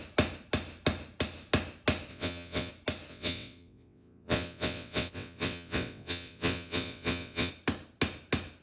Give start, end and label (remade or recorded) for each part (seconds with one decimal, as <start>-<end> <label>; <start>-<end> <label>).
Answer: 0.0-2.1 recorded; 2.1-2.7 remade; 2.7-3.1 recorded; 3.1-7.5 remade; 7.5-8.6 recorded